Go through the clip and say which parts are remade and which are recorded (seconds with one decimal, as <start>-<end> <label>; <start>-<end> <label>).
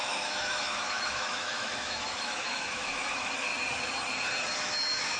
0.0-3.5 remade; 3.5-4.6 recorded; 4.6-5.2 remade